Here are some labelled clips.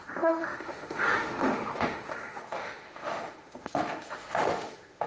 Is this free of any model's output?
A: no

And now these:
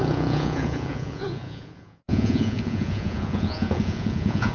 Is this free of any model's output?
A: no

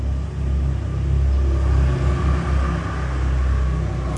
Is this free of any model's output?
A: yes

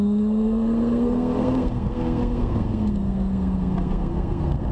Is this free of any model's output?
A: no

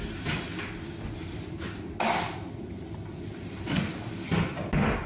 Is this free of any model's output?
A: yes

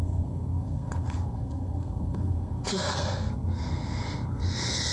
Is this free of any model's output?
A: no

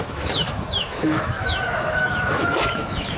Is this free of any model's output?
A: no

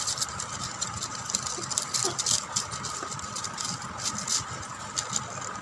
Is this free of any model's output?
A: yes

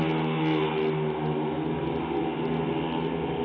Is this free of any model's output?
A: yes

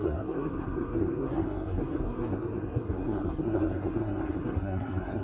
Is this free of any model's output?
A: no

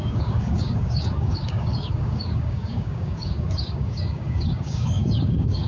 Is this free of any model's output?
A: no